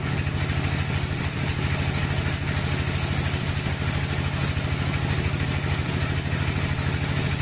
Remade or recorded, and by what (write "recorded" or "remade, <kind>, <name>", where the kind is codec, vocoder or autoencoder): recorded